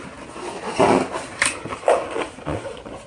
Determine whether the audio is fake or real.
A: real